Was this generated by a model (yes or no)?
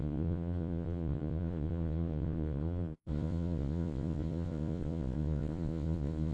yes